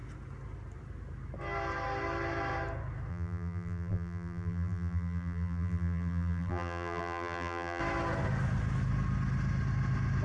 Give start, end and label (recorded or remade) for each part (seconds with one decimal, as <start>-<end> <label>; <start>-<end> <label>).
0.0-3.1 recorded; 3.1-7.8 remade; 7.8-10.2 recorded